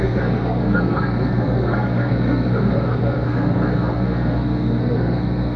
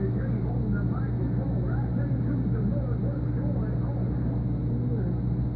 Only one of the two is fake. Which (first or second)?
first